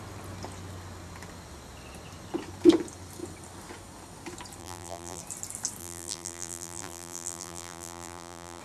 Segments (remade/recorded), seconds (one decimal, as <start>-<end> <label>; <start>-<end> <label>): 0.0-4.6 recorded; 4.6-5.2 remade; 5.2-5.8 recorded; 5.8-8.6 remade